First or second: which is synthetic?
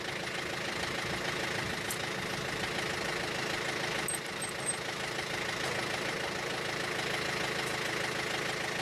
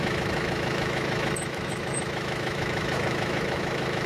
second